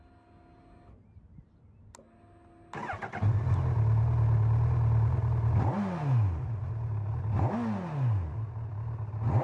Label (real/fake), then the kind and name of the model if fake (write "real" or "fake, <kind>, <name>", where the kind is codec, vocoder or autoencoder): real